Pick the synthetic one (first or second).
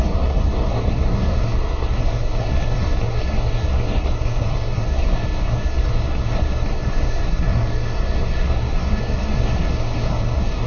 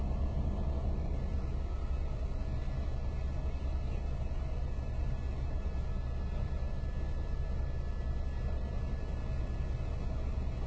first